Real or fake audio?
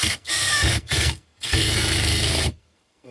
fake